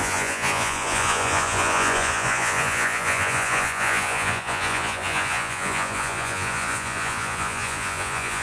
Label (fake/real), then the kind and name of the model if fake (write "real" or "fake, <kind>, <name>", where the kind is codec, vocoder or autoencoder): fake, vocoder, Vocos